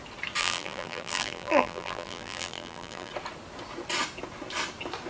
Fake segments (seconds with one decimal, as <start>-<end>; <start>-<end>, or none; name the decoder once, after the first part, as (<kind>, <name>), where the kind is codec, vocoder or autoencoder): 0.4-3.1 (vocoder, BigVGAN v2)